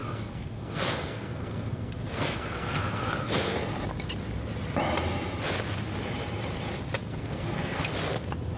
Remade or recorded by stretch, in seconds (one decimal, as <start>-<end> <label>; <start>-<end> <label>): 0.0-3.6 remade; 3.6-7.0 recorded; 7.0-7.8 remade; 7.8-8.6 recorded